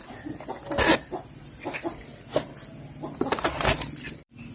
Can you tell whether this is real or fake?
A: fake